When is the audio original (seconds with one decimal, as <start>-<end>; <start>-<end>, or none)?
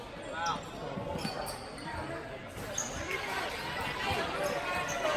0.0-5.2